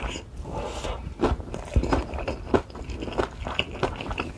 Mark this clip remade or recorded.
recorded